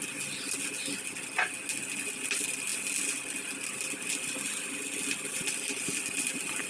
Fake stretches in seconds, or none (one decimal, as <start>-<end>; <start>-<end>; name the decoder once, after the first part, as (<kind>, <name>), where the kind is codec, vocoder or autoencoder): none

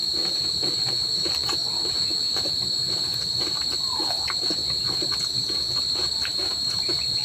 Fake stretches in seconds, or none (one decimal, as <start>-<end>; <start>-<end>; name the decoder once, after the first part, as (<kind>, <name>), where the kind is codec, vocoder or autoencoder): 0.0-7.2 (vocoder, BigVGAN v2)

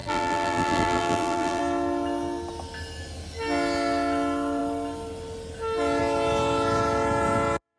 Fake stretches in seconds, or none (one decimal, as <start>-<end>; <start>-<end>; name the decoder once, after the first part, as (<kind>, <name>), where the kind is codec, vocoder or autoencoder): 0.0-1.6 (vocoder, BigVGAN v2)

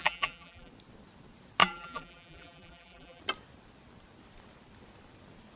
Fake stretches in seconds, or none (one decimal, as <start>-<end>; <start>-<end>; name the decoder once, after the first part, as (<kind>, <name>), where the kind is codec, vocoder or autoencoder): 0.0-0.7 (vocoder, BigVGAN v2); 1.6-3.2

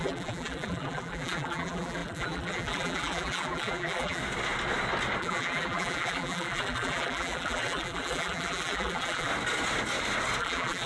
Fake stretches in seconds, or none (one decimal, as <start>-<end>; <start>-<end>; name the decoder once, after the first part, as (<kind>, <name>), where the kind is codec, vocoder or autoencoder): 0.0-4.2 (vocoder, BigVGAN v2); 5.2-9.3; 10.4-10.9